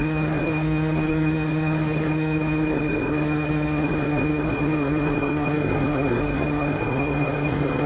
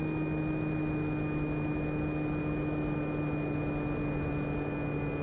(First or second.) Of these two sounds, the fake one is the first